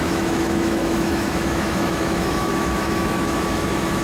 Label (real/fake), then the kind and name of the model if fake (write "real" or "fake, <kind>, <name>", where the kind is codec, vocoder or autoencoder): fake, autoencoder, DAC-VAE